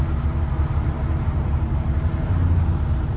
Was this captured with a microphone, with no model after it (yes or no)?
no